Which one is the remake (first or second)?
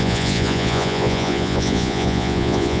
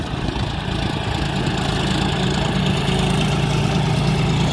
first